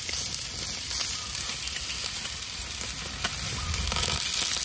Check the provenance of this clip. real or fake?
real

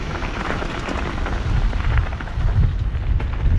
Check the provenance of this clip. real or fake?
real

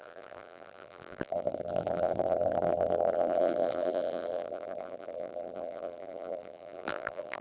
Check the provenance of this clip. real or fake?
fake